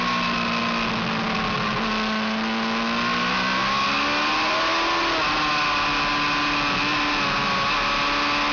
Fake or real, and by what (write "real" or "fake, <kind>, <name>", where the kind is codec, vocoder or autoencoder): real